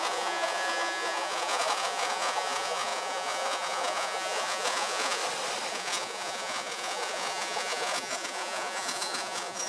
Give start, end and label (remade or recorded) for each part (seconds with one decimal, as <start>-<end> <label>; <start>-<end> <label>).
0.0-5.2 remade; 5.2-5.7 recorded; 5.7-9.7 remade